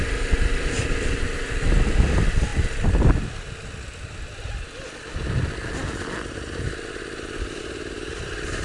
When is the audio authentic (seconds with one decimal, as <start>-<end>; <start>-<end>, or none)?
0.0-8.6